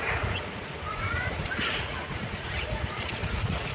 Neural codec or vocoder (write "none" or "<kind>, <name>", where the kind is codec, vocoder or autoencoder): vocoder, Vocos